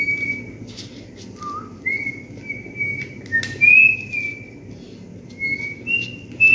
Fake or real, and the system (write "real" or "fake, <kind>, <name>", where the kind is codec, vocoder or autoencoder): real